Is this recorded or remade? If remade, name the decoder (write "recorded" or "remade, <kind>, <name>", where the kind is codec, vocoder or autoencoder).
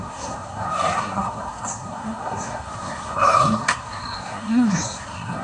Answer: remade, codec, SNAC